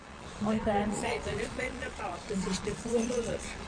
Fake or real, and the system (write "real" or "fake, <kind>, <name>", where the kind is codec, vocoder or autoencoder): fake, vocoder, Vocos